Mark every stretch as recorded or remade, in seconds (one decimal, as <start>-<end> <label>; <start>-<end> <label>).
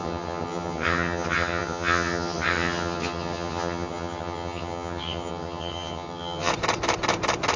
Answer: 0.0-6.5 remade; 6.5-7.6 recorded